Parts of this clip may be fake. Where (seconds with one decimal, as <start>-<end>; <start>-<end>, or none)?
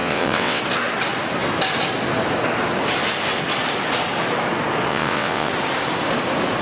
0.0-0.6; 4.9-5.5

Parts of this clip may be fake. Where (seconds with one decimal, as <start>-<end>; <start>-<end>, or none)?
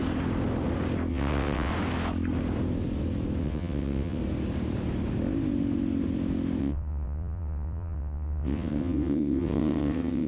1.1-1.7; 3.4-4.2; 6.6-10.3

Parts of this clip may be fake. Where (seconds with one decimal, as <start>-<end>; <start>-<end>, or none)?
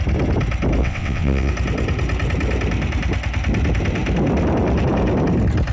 0.8-1.5